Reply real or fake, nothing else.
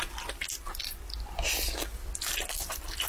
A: real